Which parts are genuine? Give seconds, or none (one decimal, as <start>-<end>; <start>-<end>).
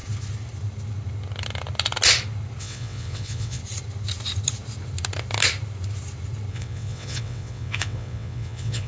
0.0-2.6; 3.6-6.5